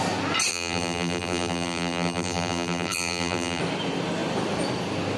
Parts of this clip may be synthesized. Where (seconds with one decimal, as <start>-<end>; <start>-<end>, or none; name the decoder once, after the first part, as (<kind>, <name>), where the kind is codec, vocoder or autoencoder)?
0.5-3.6 (vocoder, BigVGAN v2)